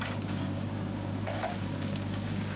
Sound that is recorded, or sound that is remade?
remade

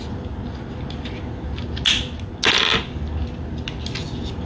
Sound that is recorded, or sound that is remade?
recorded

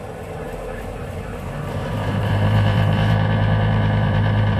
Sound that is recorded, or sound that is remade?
remade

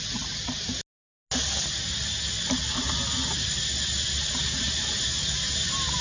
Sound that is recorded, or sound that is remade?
recorded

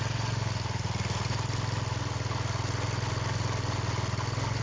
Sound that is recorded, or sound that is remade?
recorded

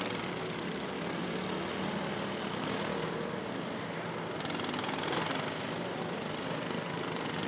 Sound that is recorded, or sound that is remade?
recorded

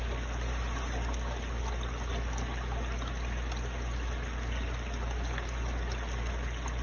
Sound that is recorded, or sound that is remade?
recorded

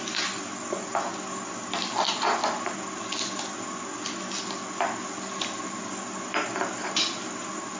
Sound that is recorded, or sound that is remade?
recorded